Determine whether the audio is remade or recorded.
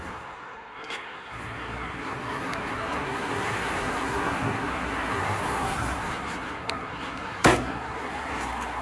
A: remade